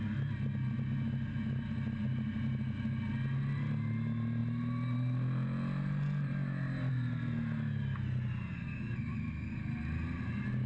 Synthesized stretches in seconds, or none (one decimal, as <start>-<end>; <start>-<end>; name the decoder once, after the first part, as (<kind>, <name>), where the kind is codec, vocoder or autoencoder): none